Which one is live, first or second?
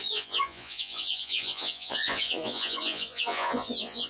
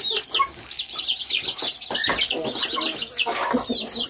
second